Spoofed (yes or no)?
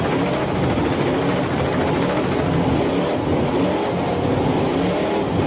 no